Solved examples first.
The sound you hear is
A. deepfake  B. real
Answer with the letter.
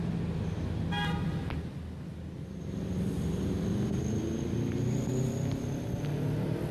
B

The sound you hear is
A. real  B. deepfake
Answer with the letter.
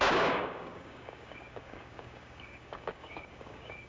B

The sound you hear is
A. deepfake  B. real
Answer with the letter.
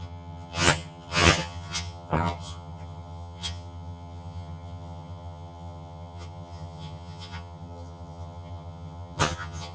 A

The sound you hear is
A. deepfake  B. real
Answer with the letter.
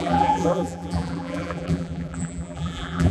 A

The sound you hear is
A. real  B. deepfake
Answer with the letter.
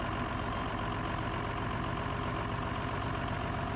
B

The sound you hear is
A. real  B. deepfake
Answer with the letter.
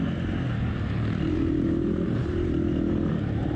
A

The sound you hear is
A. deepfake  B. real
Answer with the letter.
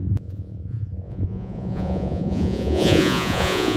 A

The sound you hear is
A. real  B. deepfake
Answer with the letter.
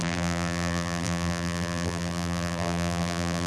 B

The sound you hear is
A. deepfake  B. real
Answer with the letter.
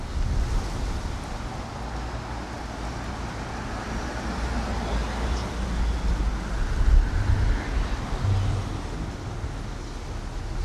B